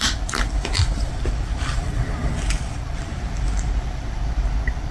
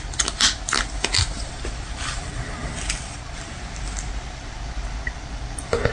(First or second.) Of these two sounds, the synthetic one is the first